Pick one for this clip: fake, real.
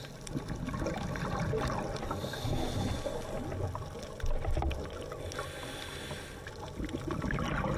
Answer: real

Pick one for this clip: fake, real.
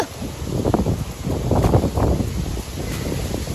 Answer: real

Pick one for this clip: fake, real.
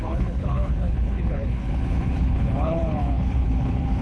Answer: fake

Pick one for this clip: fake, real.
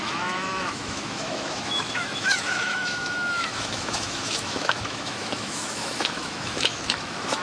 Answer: fake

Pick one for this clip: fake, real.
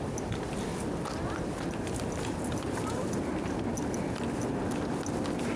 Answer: real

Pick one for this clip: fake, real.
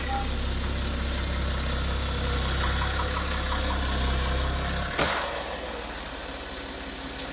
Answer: real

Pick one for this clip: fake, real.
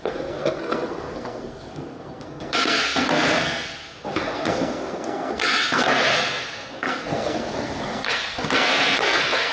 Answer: fake